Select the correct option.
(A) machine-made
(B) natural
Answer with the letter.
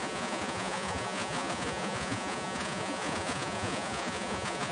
A